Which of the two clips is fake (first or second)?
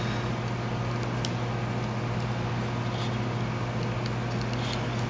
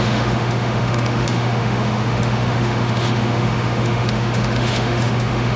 second